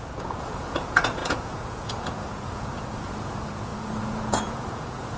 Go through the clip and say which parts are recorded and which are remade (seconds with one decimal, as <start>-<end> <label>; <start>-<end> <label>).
0.0-5.2 remade